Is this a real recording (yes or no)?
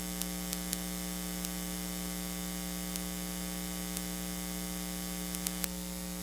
yes